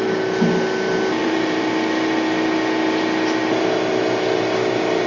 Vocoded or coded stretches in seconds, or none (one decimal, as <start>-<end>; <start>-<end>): 1.2-1.7